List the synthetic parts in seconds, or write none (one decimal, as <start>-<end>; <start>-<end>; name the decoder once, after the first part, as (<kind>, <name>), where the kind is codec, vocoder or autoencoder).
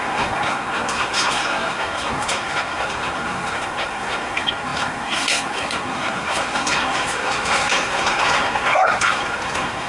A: 0.0-9.9 (codec, SNAC)